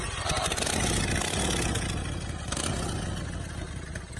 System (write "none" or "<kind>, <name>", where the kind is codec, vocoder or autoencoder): none